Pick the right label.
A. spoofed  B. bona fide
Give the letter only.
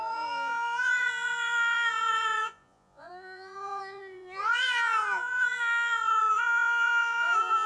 A